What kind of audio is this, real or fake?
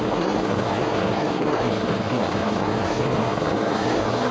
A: fake